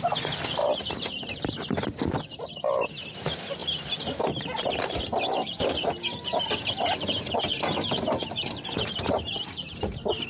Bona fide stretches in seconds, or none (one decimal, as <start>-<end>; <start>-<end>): 0.0-10.3